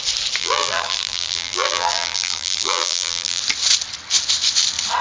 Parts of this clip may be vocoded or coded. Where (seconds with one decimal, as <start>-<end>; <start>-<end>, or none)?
0.4-3.4